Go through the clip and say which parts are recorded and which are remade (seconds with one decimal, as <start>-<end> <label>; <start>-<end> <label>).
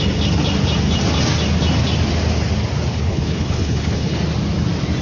0.0-2.9 recorded; 2.9-4.2 remade; 4.2-5.0 recorded